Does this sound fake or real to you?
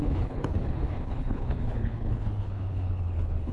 fake